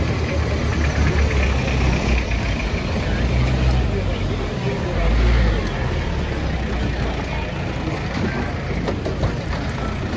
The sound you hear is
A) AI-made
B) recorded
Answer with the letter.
B